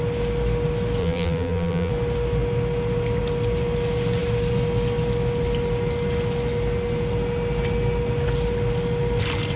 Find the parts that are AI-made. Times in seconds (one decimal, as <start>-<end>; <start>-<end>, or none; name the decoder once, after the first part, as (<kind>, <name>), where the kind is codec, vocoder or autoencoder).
1.0-1.9 (vocoder, BigVGAN v2)

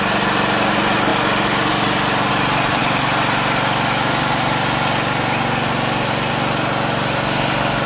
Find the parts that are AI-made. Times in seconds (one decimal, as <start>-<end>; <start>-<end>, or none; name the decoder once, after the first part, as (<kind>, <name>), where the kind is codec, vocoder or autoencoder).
none

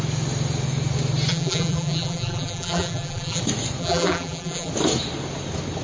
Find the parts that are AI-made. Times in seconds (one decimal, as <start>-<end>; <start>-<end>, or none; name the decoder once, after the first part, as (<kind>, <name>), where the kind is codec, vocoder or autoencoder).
1.3-3.4 (vocoder, BigVGAN v2); 3.8-4.7

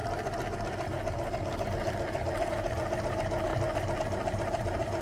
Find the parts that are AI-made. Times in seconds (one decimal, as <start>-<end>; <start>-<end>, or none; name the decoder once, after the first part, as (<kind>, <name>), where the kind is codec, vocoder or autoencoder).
2.5-3.5 (vocoder, BigVGAN v2); 4.0-5.0

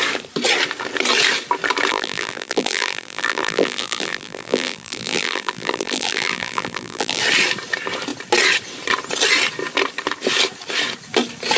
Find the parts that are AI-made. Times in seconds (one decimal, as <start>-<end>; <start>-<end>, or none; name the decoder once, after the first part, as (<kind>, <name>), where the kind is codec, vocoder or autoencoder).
1.9-7.2 (vocoder, BigVGAN v2)